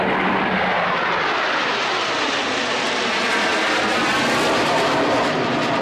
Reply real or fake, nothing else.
real